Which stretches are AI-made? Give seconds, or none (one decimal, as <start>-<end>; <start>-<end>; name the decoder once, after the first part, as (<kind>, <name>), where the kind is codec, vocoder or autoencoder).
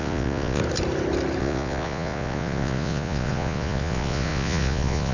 0.0-0.6 (vocoder, Vocos); 1.4-5.1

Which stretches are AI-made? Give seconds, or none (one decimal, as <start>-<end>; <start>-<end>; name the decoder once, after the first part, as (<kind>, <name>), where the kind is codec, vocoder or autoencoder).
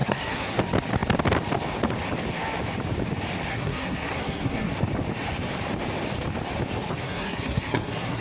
0.0-0.6 (codec, SNAC); 3.5-4.7; 7.0-8.2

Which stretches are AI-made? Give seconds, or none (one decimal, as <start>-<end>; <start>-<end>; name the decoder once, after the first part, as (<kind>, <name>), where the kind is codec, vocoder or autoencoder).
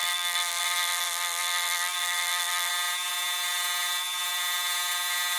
0.0-2.7 (vocoder, BigVGAN v2)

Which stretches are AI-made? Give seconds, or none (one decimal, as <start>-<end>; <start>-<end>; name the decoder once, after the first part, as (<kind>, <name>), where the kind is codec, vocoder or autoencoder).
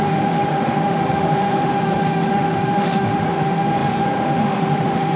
0.0-5.2 (autoencoder, DAC-VAE)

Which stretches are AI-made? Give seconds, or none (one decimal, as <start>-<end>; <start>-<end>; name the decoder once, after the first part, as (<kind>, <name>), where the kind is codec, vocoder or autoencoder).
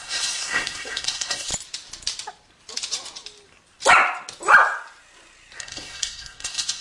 0.0-1.5 (codec, SNAC); 5.6-6.8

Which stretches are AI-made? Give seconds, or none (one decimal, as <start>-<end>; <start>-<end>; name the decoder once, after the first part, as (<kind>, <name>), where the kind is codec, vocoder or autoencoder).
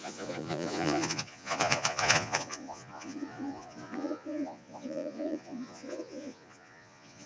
0.0-7.3 (vocoder, Vocos)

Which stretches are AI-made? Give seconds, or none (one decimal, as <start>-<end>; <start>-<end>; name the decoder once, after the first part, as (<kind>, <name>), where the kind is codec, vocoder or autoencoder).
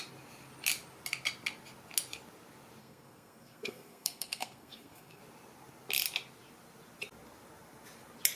2.8-5.2 (codec, SNAC)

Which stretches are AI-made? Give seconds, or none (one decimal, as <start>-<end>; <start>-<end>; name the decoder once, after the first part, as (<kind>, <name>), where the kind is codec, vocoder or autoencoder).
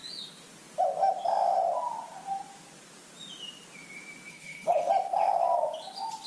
4.3-4.9 (codec, HILCodec)